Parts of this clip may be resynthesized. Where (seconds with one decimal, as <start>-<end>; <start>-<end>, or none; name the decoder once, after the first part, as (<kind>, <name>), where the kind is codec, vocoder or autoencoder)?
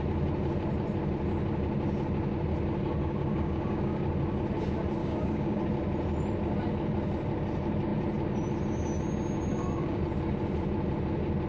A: 3.0-4.0 (codec, DAC); 5.0-5.6; 9.5-10.0